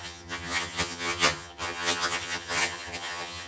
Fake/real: fake